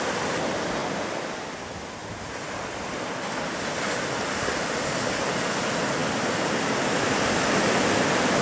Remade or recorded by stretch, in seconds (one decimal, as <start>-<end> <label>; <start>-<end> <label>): 0.0-2.0 recorded; 2.0-4.7 remade; 4.7-8.4 recorded